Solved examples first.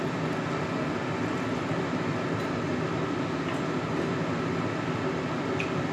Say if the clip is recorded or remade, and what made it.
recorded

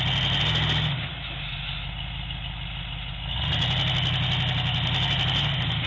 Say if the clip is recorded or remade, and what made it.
recorded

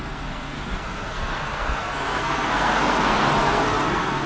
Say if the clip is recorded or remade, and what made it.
remade, codec, SNAC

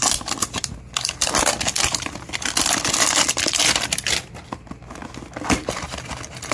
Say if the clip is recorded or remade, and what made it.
recorded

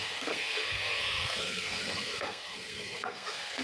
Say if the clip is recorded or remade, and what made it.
remade, codec, SNAC